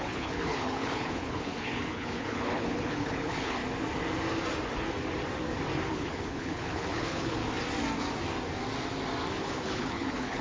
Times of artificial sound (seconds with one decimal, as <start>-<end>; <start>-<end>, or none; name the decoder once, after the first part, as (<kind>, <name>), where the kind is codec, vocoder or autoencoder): 0.0-3.6 (codec, HILCodec); 5.9-7.4; 9.4-10.4